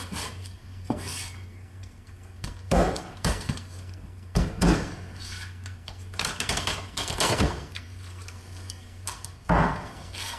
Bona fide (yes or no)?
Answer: no